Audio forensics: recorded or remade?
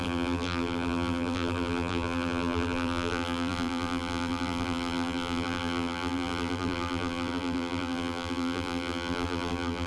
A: remade